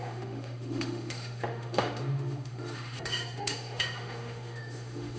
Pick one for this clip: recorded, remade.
remade